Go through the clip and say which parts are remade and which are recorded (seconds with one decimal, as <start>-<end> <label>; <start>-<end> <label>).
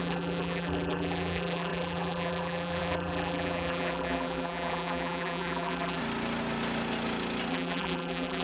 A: 0.0-6.0 remade; 6.0-7.5 recorded; 7.5-8.4 remade